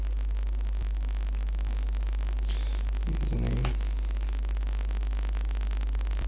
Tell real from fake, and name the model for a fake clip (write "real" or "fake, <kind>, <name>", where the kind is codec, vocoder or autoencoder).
real